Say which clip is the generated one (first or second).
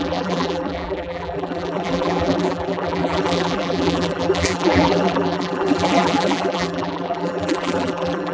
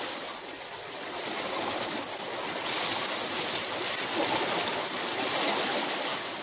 first